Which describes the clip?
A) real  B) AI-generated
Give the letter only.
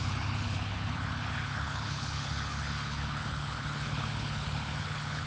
B